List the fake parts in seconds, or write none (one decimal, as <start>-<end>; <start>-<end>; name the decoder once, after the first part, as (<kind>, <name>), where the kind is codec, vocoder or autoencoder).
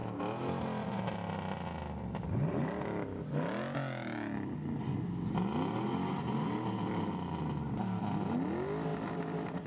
none